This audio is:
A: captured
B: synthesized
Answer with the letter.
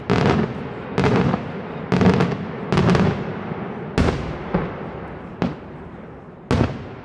A